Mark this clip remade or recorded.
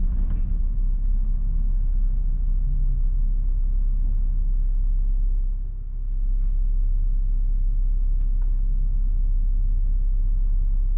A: recorded